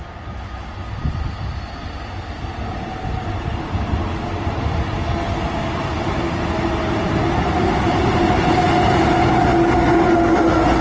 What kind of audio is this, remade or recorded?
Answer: recorded